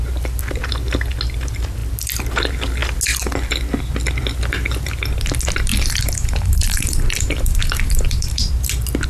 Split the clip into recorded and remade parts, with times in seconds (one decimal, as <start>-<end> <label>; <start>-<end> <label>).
0.0-5.7 recorded; 5.7-8.5 remade; 8.5-9.1 recorded